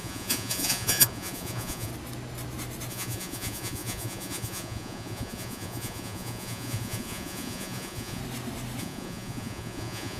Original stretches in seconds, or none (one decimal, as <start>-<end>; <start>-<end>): 1.9-2.9; 8.2-8.8